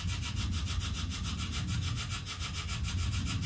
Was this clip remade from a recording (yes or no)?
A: no